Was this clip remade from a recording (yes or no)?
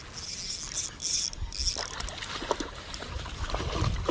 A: no